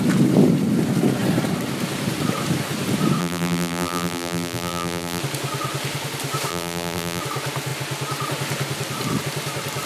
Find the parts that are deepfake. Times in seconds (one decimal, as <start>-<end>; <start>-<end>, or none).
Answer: 3.2-5.2; 6.5-7.2